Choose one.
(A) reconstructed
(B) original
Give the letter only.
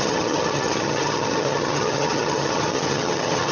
A